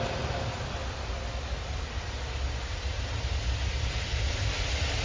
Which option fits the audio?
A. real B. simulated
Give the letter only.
A